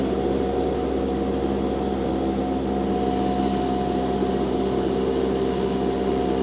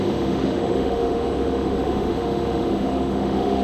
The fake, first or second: second